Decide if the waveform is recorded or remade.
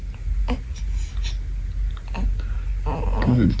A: recorded